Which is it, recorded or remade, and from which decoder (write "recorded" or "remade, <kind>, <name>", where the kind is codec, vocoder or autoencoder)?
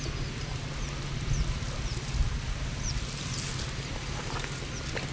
recorded